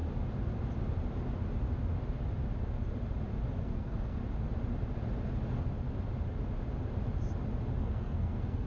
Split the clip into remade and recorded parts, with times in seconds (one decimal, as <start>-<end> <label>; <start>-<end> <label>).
0.0-3.6 recorded; 3.6-4.2 remade; 4.2-7.8 recorded; 7.8-8.7 remade